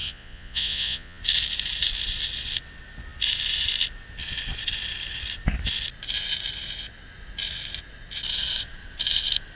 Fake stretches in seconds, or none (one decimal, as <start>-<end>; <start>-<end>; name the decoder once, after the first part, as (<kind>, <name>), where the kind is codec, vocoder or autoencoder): 0.0-1.2 (vocoder, Vocos)